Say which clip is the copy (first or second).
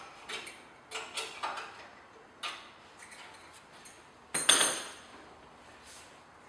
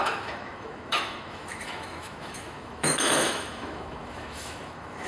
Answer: second